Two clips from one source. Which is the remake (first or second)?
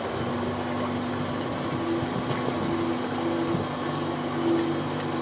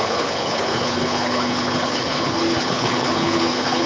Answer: second